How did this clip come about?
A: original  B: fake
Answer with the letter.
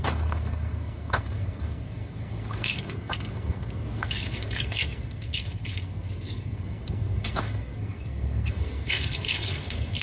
B